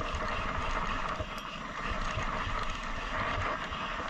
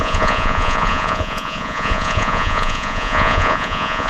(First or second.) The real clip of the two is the first